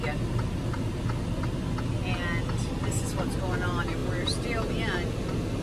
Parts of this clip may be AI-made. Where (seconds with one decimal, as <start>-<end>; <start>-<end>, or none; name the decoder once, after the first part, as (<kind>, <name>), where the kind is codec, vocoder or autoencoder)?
none